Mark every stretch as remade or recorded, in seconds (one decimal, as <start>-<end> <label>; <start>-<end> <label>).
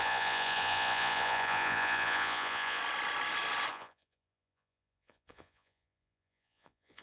0.0-2.8 remade; 2.8-3.7 recorded; 3.7-7.0 remade